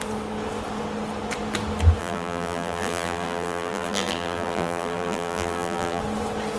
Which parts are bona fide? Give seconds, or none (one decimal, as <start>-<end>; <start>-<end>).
0.0-2.0; 6.0-6.6